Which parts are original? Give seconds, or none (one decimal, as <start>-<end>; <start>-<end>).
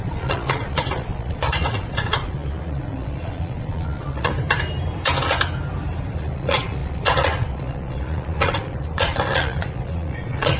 4.3-6.1